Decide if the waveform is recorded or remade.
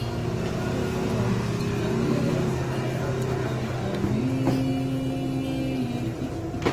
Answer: recorded